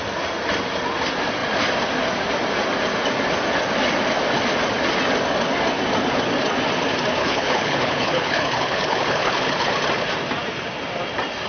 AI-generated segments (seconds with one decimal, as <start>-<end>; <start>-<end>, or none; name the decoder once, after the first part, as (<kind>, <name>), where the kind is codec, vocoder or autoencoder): 7.2-9.7 (codec, HILCodec)